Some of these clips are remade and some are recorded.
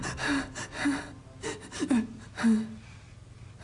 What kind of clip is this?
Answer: recorded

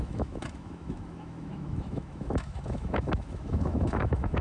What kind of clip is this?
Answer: remade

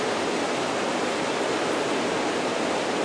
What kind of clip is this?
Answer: recorded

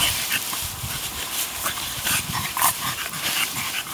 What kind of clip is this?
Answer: remade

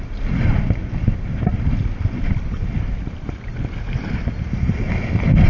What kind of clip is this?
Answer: recorded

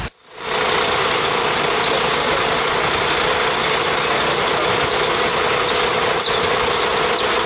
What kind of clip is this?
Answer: recorded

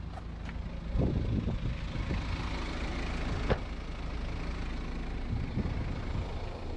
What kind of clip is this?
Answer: recorded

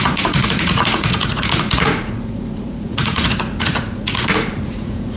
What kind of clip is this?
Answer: remade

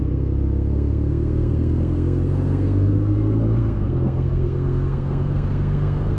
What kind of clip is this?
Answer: remade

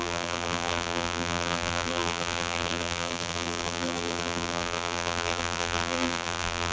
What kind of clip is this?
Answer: remade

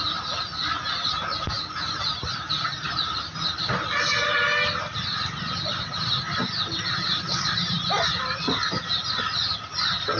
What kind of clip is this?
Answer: recorded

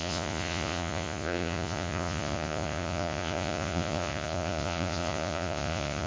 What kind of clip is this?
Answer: remade